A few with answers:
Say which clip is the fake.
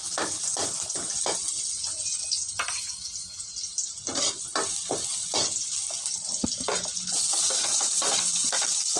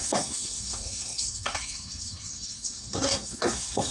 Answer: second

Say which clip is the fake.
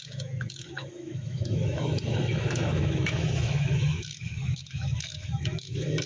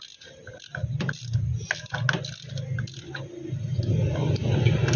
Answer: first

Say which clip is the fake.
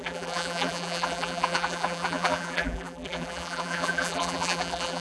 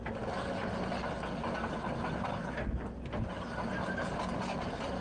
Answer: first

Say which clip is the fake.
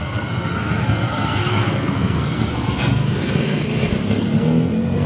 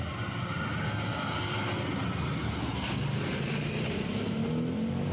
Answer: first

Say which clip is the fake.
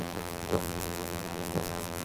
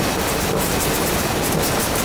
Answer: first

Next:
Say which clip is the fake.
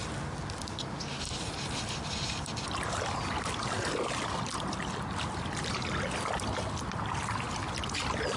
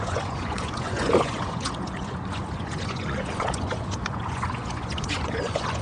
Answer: second